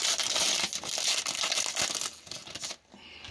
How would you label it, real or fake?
real